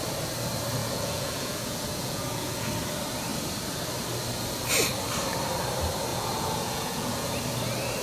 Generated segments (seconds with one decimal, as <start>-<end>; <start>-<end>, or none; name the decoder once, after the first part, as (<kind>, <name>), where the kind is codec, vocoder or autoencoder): 0.8-2.7 (vocoder, Vocos); 6.1-7.3